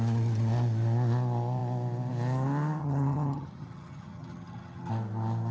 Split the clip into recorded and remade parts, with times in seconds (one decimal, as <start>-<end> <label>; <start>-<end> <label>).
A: 0.0-2.8 recorded; 2.8-4.9 remade; 4.9-5.5 recorded